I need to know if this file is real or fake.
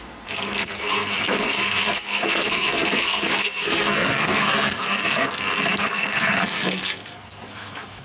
fake